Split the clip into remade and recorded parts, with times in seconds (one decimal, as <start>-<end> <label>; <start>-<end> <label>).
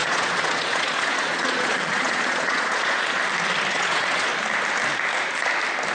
0.0-3.2 remade; 3.2-3.7 recorded; 3.7-4.3 remade; 4.3-5.9 recorded